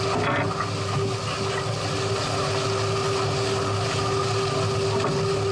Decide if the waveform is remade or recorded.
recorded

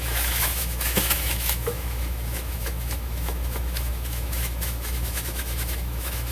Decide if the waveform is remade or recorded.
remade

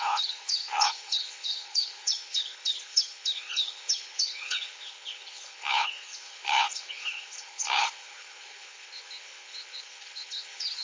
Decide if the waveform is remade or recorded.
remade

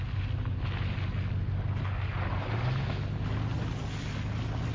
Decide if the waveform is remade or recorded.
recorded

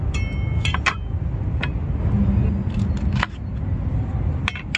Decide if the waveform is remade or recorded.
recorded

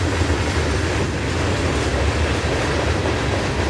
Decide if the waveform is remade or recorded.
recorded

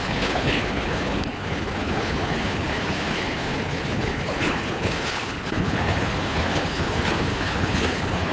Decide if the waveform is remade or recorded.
remade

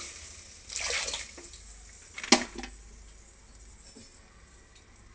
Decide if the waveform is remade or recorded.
recorded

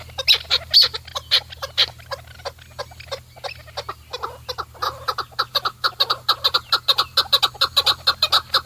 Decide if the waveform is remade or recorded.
recorded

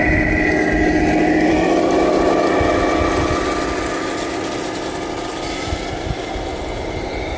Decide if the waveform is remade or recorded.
recorded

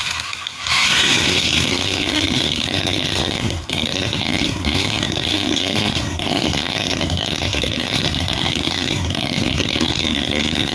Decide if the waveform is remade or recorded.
remade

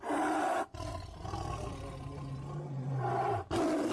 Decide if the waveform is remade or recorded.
recorded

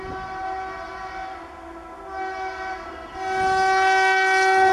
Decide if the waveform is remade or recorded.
recorded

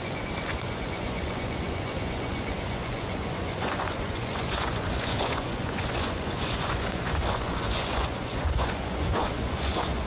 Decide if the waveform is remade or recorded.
remade